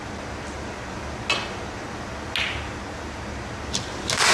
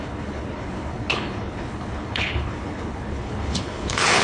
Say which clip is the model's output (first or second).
second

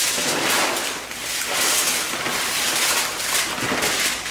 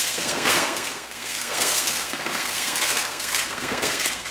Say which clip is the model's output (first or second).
second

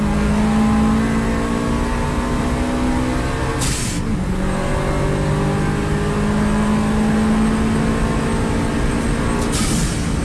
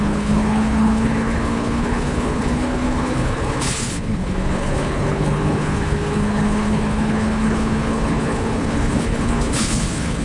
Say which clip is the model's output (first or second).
second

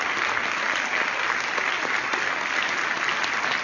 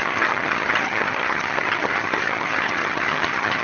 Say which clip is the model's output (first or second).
second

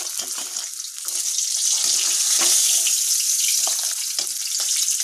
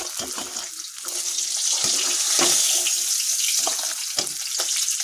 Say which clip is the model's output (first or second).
first